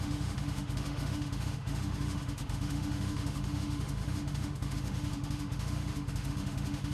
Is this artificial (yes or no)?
yes